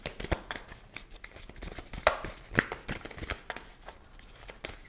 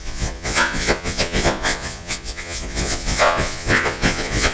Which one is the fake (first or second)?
second